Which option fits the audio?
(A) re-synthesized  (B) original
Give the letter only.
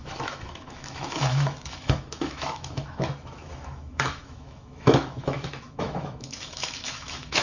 A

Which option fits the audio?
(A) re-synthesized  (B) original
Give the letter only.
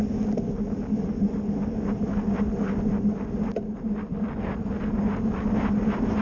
B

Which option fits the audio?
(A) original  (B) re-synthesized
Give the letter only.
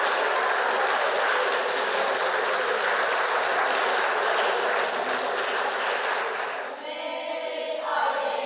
A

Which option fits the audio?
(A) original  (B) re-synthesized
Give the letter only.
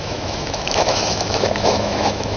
B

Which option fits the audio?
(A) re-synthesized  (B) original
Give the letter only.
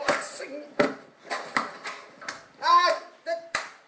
B